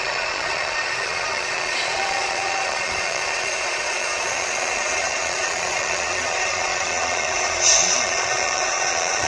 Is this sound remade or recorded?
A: remade